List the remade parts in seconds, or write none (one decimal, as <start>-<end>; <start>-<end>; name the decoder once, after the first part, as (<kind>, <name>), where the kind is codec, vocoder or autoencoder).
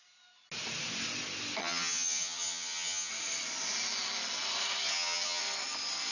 1.6-3.1 (vocoder, HiFi-GAN); 4.9-5.4